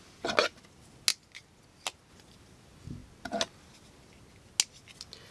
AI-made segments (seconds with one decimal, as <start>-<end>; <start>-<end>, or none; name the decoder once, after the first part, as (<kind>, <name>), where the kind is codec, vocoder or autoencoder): none